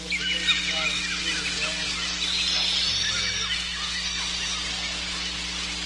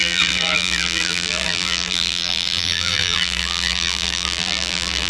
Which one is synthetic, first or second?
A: second